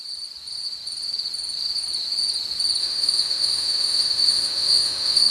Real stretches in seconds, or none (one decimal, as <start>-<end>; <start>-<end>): 0.0-2.8